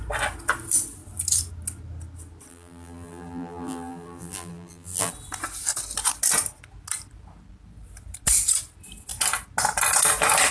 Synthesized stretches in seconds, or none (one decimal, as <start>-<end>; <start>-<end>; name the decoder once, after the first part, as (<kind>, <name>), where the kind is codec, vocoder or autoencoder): 2.5-5.1 (vocoder, BigVGAN v2)